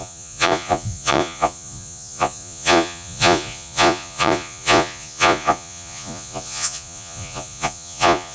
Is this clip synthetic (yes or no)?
yes